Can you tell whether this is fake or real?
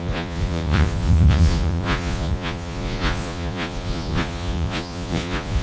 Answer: fake